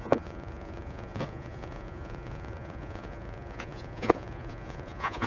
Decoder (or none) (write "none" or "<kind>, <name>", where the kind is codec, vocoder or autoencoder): vocoder, Vocos